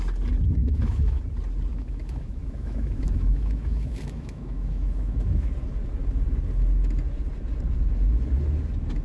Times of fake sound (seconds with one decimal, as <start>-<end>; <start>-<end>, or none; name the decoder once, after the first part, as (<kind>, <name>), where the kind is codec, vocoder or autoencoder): 0.6-1.2 (autoencoder, DAC-VAE); 1.7-5.5